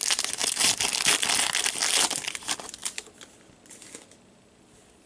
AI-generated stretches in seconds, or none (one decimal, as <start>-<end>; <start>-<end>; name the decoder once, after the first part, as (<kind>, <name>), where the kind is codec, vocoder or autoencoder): 2.8-3.9 (vocoder, BigVGAN v2)